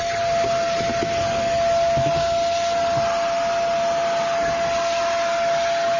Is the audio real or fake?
real